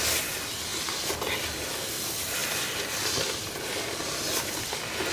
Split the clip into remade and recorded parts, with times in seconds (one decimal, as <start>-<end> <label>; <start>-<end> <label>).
0.0-5.1 recorded